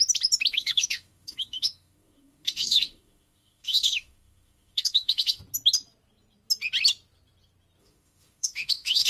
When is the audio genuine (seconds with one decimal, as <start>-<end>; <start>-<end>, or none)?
0.0-0.5; 5.4-7.8